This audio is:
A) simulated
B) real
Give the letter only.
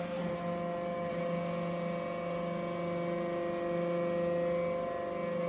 B